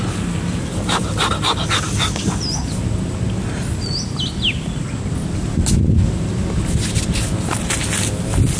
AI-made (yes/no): no